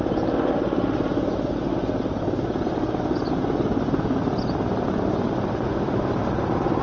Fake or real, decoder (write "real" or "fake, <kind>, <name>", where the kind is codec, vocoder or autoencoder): real